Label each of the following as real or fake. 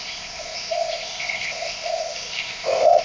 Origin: fake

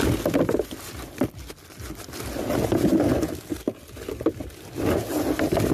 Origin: real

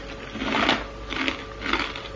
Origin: real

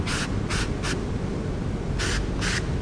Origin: real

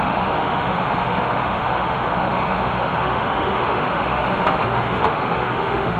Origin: fake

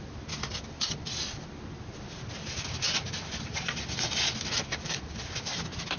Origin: real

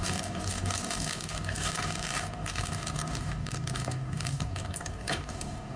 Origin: fake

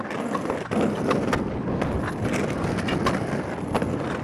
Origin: real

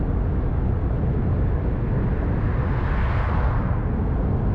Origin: real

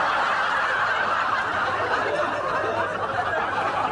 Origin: real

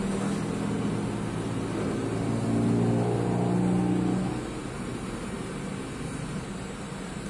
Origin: real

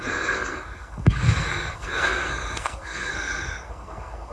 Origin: fake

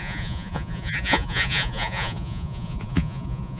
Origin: fake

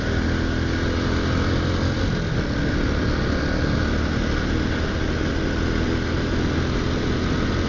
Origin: real